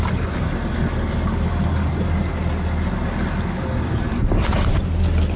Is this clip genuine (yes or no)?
yes